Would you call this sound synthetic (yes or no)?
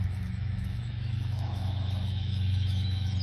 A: yes